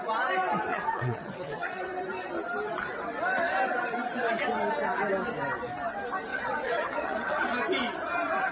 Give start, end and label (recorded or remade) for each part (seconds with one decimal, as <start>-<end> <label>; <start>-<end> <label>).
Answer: 0.0-0.7 recorded; 0.7-2.0 remade; 2.0-6.3 recorded; 6.3-7.4 remade; 7.4-8.5 recorded